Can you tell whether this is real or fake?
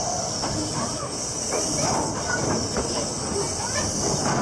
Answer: real